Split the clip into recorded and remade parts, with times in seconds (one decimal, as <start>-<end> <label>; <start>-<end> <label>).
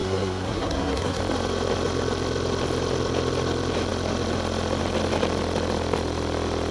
0.0-1.2 remade; 1.2-6.7 recorded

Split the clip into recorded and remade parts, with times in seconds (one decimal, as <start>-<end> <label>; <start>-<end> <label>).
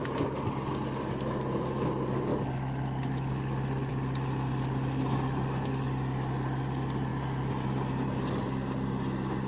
0.0-9.5 recorded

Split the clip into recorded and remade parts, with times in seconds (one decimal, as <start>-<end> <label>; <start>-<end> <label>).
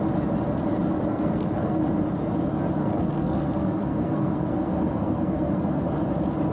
0.0-1.1 recorded; 1.1-1.8 remade; 1.8-2.8 recorded; 2.8-5.8 remade; 5.8-6.5 recorded